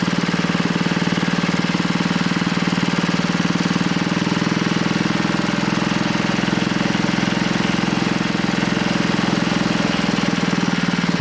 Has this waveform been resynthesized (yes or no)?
no